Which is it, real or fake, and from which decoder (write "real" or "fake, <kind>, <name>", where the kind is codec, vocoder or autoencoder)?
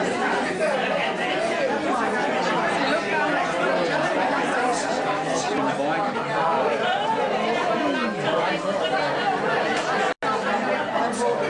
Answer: real